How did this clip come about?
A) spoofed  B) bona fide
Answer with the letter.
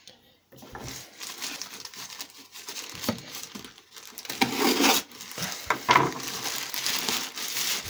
B